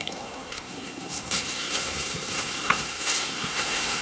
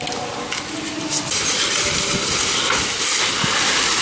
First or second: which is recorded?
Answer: second